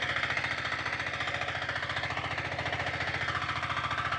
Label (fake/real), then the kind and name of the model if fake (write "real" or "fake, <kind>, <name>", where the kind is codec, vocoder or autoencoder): real